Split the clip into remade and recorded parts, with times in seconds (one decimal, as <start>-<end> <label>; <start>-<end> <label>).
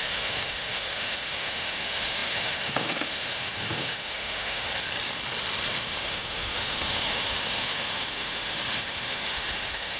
0.0-4.7 remade; 4.7-5.7 recorded; 5.7-10.0 remade